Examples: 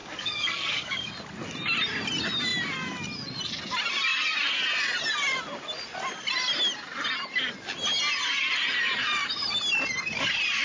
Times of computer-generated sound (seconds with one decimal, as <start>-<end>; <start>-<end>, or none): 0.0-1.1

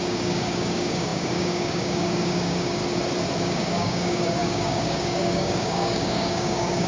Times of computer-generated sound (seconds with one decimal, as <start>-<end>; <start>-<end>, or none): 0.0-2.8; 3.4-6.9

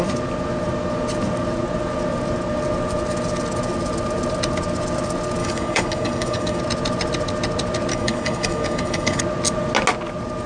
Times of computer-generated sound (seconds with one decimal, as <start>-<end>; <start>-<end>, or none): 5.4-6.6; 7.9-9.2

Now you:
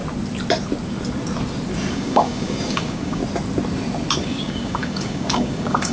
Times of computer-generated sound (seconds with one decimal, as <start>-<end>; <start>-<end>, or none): 1.9-3.2; 4.2-5.9